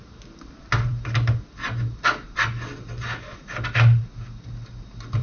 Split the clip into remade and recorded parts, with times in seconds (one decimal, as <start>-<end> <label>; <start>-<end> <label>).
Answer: 0.0-5.2 recorded